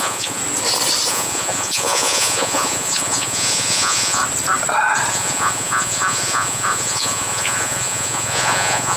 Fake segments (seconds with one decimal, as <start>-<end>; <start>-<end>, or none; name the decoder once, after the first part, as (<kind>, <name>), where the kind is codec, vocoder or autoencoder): 0.0-0.4 (vocoder, Vocos); 1.1-4.2; 5.1-9.0